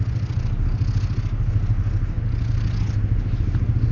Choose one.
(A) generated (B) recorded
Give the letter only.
B